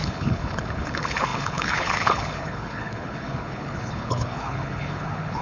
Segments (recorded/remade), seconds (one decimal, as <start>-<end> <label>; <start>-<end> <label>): 0.0-5.4 remade